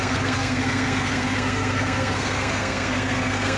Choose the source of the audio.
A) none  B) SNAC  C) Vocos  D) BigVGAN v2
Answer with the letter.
B